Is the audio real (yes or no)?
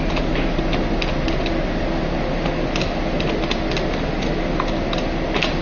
yes